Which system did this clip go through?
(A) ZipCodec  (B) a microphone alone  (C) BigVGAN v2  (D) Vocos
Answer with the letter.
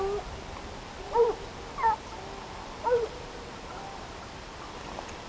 B